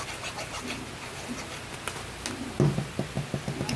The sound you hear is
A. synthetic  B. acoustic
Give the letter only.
B